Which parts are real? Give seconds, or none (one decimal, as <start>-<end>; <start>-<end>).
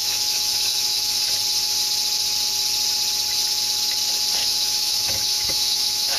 1.2-4.4